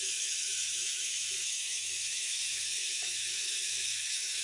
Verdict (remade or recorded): remade